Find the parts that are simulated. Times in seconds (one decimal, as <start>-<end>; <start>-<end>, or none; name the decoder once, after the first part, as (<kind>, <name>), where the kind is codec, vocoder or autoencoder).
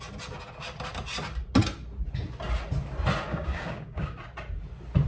3.3-4.2 (codec, DAC)